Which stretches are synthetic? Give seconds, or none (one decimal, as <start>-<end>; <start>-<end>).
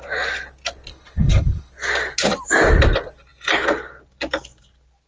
0.9-1.7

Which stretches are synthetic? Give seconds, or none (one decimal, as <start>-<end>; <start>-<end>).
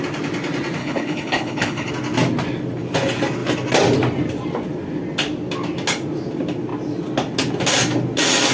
0.8-1.9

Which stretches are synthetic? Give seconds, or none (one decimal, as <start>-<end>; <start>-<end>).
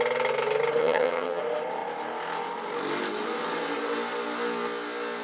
0.8-1.4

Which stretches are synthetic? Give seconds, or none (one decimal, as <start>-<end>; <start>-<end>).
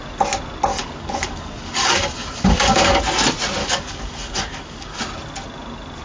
0.7-3.0; 3.6-5.0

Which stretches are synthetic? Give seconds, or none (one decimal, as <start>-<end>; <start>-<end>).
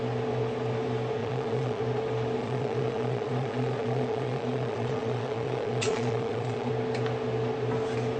1.2-1.8; 2.4-6.7